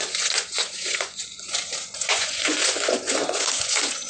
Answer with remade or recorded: remade